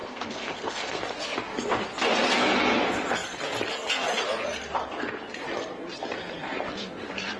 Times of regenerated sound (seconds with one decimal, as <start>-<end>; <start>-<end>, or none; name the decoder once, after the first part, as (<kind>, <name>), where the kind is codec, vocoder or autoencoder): 0.0-1.0 (codec, SNAC)